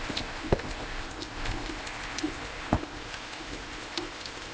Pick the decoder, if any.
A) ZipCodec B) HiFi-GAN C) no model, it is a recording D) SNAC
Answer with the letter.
A